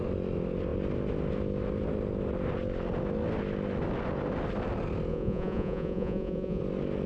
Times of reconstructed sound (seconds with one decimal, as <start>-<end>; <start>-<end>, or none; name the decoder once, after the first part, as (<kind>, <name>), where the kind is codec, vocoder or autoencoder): 5.1-6.6 (vocoder, Vocos)